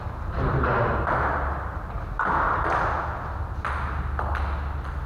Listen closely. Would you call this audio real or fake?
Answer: real